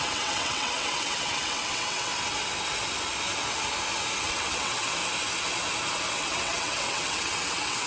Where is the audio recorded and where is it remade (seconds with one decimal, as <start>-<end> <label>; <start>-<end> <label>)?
0.0-2.1 remade; 2.1-4.2 recorded; 4.2-5.0 remade; 5.0-6.1 recorded; 6.1-7.9 remade